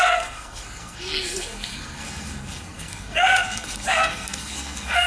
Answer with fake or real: fake